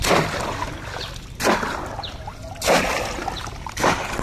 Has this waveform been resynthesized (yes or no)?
no